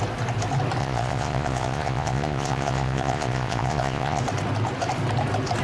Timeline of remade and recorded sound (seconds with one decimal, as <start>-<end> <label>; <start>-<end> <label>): 0.0-0.8 recorded; 0.8-4.2 remade; 4.2-5.6 recorded